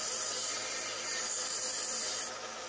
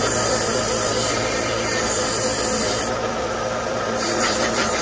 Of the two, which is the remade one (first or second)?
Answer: second